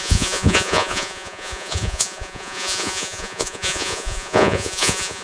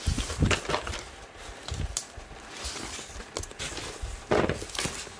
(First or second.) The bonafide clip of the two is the second